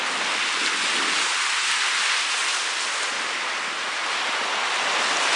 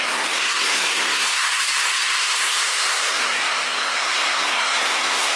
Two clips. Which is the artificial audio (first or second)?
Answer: second